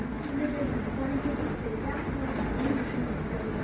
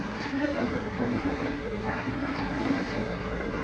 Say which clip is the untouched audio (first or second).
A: first